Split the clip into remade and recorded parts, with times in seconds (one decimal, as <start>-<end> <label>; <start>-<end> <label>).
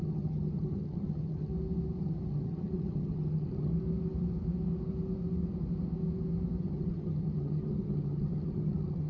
0.0-1.5 remade; 1.5-2.0 recorded; 2.0-3.7 remade; 3.7-6.6 recorded; 6.6-9.1 remade